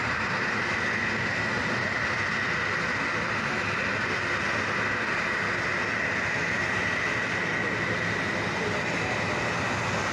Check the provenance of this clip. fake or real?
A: real